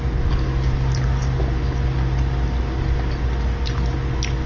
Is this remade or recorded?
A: recorded